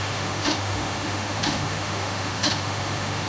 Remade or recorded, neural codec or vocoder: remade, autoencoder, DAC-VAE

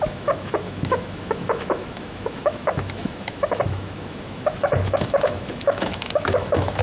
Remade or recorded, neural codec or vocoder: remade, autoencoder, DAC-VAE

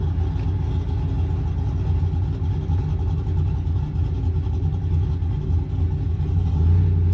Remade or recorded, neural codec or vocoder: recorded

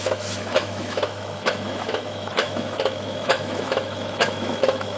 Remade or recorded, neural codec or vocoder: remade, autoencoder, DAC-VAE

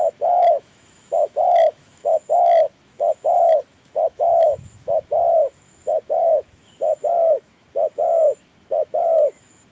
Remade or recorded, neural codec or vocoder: remade, autoencoder, DAC-VAE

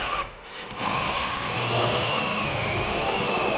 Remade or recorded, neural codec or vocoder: remade, autoencoder, DAC-VAE